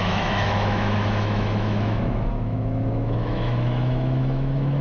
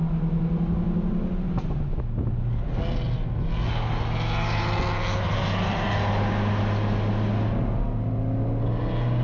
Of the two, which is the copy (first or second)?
first